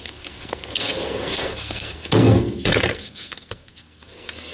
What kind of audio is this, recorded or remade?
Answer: remade